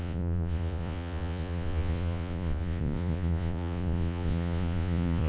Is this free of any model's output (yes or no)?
no